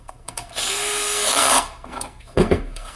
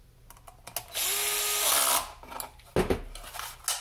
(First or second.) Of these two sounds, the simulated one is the first